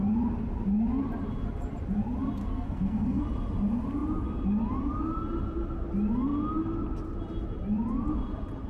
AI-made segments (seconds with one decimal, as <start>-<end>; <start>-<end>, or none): 2.4-3.2